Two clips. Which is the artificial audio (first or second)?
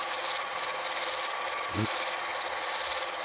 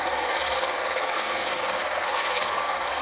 second